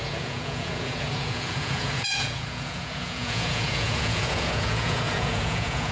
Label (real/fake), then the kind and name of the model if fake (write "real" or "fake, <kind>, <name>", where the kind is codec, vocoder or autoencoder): fake, vocoder, Vocos